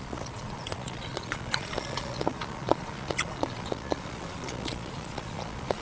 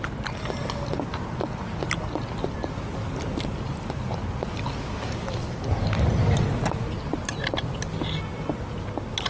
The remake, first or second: first